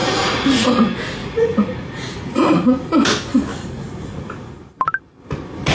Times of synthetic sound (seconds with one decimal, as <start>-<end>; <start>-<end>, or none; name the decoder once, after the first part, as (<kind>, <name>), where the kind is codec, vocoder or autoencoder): 0.0-0.7 (vocoder, Vocos); 1.2-2.7; 3.5-4.3